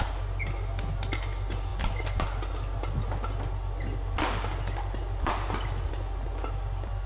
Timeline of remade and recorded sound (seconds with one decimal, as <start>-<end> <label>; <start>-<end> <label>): 0.0-7.1 recorded